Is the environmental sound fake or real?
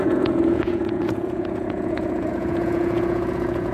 fake